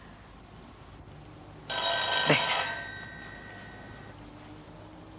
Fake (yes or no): no